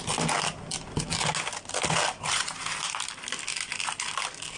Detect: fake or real real